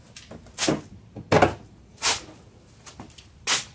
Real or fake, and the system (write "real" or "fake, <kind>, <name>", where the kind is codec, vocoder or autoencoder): real